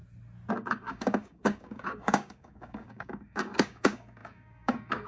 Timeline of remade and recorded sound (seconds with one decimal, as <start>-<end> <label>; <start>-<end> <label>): 0.0-0.5 recorded; 0.5-5.1 remade